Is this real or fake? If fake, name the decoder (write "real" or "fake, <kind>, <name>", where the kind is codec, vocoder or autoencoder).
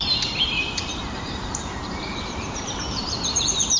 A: fake, vocoder, BigVGAN v2